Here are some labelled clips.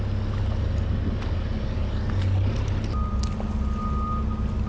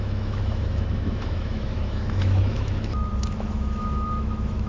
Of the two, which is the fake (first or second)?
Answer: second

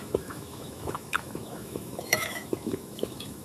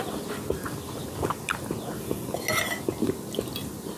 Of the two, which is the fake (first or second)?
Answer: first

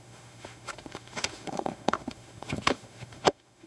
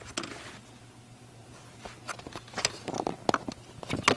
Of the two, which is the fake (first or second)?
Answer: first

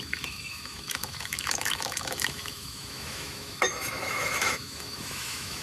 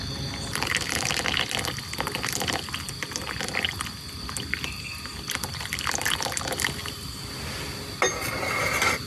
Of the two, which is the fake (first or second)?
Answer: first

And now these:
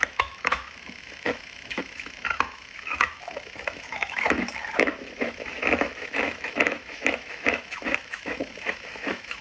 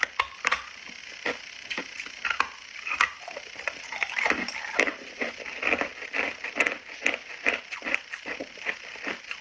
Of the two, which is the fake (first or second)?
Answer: first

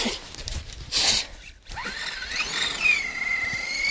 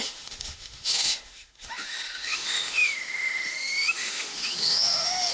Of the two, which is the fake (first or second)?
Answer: second